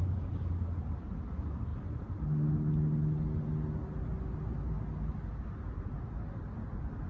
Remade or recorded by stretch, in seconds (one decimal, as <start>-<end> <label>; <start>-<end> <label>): 0.0-7.1 recorded